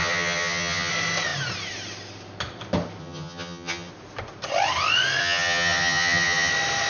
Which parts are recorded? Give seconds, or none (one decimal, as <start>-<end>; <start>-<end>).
0.9-3.0; 3.9-5.2; 6.5-6.9